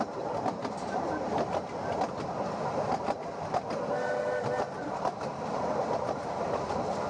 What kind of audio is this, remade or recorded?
recorded